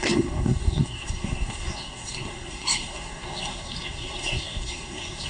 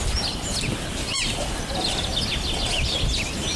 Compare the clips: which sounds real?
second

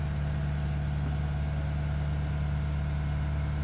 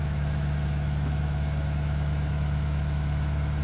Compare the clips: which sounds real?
first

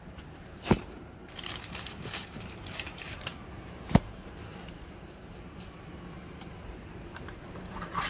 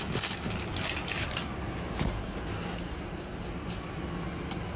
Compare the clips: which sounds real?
second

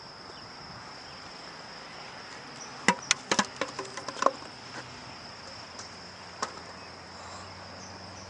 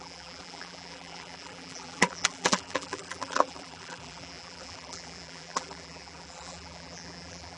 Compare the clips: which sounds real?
first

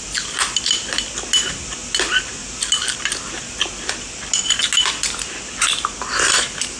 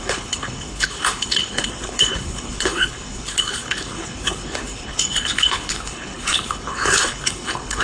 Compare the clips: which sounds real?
first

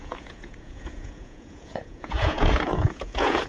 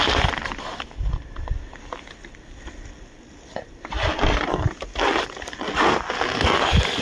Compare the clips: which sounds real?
second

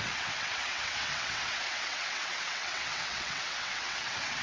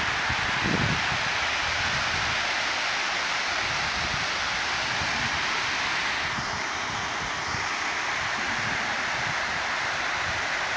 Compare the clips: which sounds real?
second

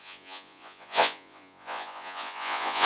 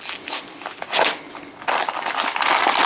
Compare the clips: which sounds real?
second